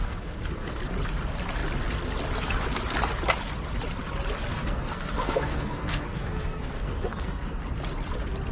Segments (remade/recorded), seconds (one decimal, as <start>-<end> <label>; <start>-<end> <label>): 0.0-0.8 remade; 0.8-4.5 recorded; 4.5-7.6 remade; 7.6-8.5 recorded